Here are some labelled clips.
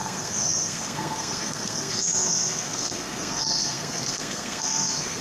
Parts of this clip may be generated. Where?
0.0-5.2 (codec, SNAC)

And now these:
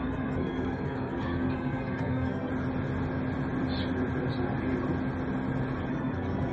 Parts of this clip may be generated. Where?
0.0-2.5 (codec, SNAC); 5.9-6.5

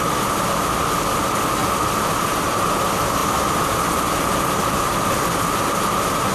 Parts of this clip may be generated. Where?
1.6-2.1 (vocoder, BigVGAN v2); 3.2-4.4

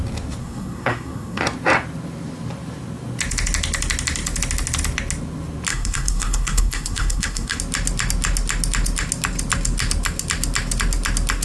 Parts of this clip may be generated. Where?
0.4-1.4 (codec, SNAC); 5.7-7.6

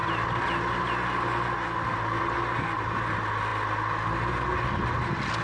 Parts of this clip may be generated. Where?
none

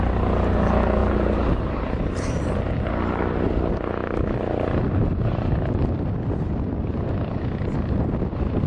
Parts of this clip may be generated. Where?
none